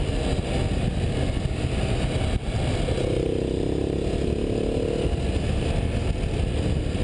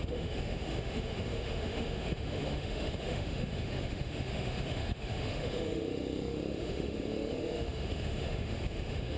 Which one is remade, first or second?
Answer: second